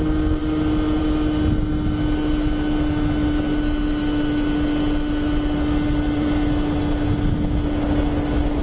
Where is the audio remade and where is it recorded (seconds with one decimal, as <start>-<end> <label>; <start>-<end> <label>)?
0.0-8.6 recorded